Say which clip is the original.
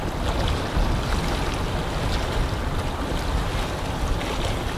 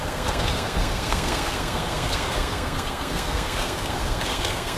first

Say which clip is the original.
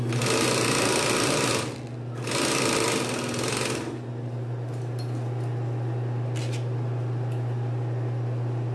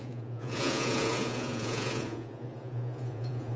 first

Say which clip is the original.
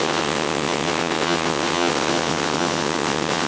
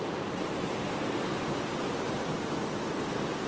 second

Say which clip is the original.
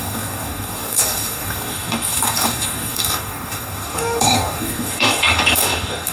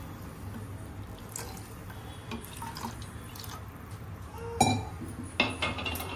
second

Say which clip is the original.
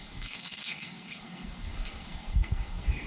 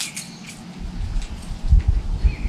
second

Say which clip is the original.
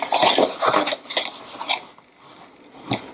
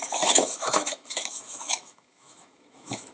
first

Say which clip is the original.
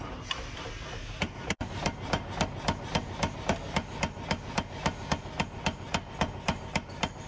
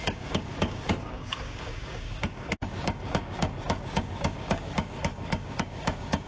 first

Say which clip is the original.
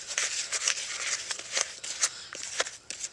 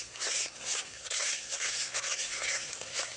first